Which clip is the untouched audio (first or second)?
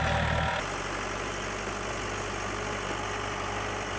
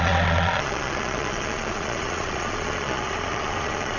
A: first